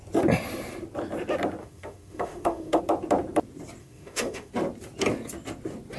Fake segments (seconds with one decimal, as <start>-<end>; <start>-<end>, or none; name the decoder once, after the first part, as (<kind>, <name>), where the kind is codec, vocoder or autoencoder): 1.6-2.8 (autoencoder, DAC-VAE); 3.8-4.5